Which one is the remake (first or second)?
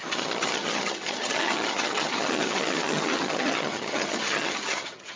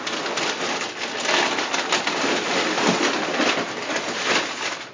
first